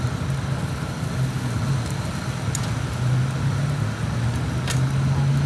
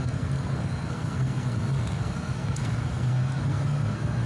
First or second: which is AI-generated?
second